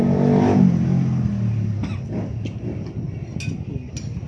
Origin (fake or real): real